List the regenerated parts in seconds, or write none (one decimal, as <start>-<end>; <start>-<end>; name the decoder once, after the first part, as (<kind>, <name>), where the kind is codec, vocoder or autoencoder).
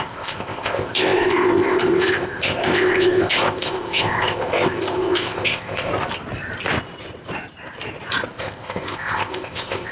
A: 0.0-5.9 (codec, ZipCodec); 8.4-9.9